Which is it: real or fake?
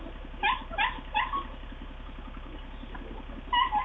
real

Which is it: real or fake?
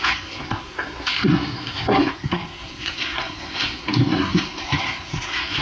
fake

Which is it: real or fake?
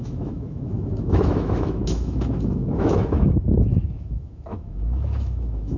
fake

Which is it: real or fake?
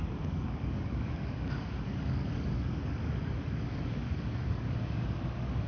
fake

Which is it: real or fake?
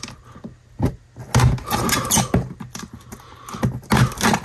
real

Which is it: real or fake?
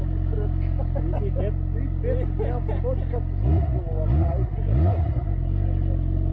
real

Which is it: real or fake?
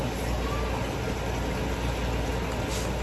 real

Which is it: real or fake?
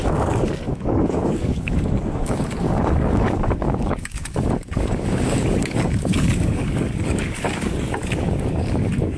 fake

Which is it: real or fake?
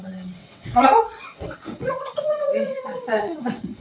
fake